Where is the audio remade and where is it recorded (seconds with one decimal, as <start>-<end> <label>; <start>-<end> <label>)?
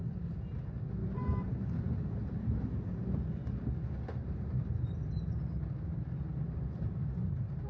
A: 0.0-1.0 recorded; 1.0-3.2 remade; 3.2-4.2 recorded; 4.2-7.7 remade